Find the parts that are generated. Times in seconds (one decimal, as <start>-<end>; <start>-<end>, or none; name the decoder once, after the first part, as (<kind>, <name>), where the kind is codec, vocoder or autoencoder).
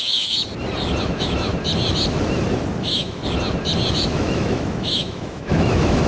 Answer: 0.0-0.5 (autoencoder, DAC-VAE); 1.0-1.5; 2.8-3.2; 3.9-6.1